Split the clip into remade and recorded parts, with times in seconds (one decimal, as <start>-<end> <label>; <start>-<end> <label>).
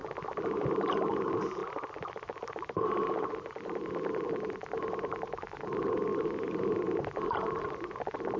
0.0-1.1 remade; 1.1-1.6 recorded; 1.6-4.3 remade; 4.3-8.4 recorded